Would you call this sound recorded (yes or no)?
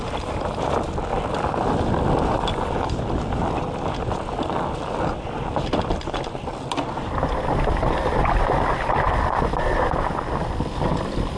yes